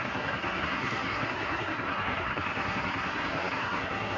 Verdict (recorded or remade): remade